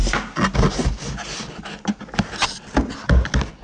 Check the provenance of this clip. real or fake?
real